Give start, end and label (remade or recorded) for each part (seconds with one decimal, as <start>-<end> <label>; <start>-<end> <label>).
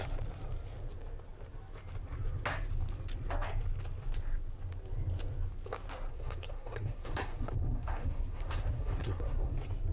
0.0-6.1 recorded; 6.1-9.5 remade; 9.5-9.9 recorded